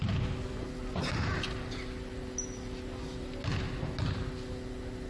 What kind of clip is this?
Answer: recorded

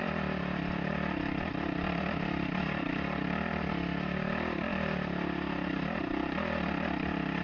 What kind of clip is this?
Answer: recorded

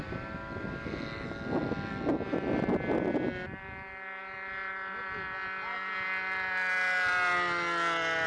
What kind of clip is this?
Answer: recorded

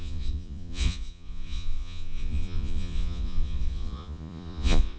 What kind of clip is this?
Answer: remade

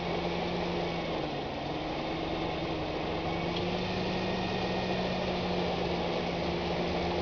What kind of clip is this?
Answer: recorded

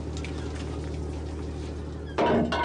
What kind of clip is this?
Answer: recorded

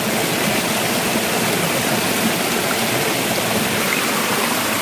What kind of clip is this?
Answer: recorded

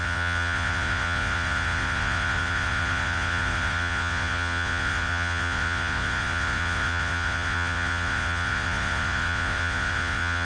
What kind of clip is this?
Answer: remade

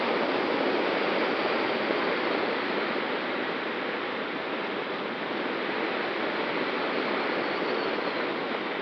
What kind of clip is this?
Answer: recorded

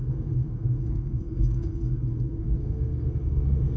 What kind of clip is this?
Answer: remade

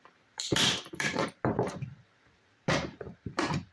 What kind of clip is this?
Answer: remade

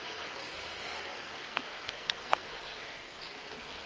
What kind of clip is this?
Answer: remade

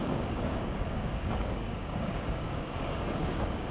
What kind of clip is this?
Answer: remade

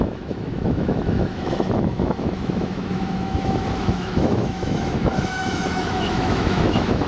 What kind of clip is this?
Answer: remade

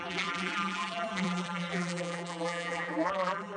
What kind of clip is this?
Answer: remade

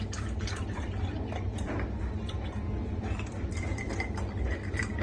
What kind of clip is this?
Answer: remade